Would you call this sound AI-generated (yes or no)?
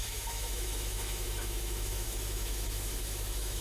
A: yes